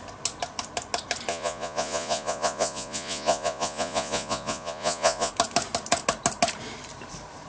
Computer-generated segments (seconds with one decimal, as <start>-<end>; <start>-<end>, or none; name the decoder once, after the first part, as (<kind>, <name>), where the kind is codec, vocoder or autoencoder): 1.3-5.3 (vocoder, Vocos)